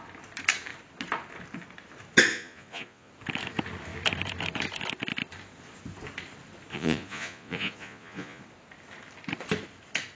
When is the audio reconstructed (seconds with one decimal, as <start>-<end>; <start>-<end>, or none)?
2.3-3.1; 6.7-8.4